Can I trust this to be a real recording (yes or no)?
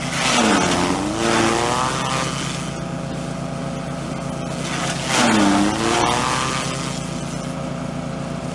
yes